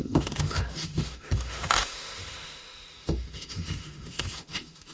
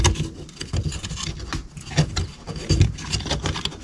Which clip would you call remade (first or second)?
first